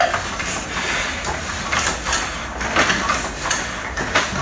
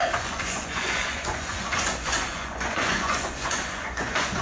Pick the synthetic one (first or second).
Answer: second